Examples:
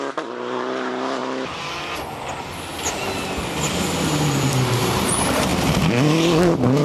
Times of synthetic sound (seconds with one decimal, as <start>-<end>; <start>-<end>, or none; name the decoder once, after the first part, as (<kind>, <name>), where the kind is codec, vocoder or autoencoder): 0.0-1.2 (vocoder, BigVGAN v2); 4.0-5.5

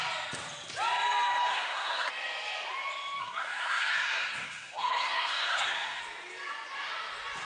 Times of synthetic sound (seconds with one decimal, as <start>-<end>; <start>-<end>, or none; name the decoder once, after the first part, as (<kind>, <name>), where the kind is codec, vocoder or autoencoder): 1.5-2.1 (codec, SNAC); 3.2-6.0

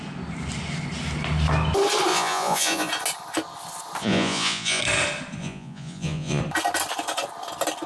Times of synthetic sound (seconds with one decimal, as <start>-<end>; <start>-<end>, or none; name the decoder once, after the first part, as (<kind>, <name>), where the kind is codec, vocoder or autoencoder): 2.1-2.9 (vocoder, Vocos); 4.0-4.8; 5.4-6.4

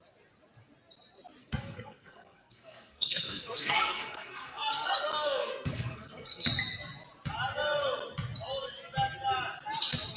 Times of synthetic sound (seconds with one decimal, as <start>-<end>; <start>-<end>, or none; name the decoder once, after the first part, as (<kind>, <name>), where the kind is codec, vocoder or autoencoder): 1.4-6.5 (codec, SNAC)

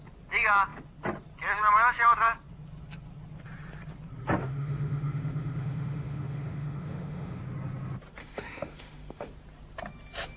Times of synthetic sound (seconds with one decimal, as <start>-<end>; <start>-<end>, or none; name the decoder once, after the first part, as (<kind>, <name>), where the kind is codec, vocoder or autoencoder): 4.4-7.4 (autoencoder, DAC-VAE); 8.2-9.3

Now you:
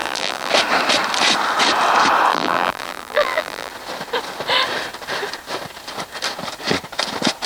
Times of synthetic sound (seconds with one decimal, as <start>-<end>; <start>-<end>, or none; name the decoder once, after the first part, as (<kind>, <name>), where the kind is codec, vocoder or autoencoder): 0.0-0.5 (vocoder, BigVGAN v2); 2.3-3.7

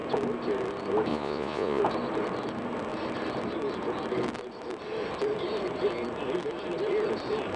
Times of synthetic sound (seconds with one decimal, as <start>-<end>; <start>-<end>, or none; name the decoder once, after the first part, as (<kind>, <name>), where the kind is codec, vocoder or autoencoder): 1.1-1.8 (vocoder, Vocos)

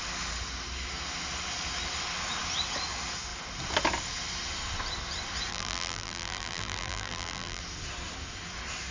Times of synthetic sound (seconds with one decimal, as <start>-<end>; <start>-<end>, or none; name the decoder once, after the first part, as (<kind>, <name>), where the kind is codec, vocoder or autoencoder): 5.5-7.6 (vocoder, BigVGAN v2)